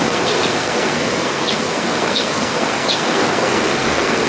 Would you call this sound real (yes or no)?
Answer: no